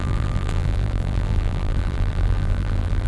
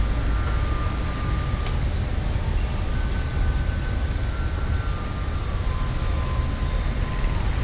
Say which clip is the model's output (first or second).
first